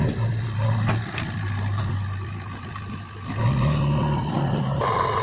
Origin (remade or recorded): recorded